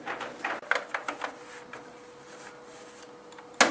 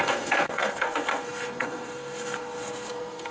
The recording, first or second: first